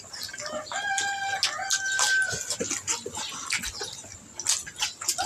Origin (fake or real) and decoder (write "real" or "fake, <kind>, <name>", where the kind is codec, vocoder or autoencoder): real